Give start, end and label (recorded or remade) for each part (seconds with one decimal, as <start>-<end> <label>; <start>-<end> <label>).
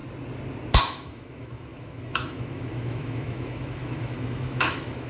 0.0-0.8 recorded; 0.8-5.1 remade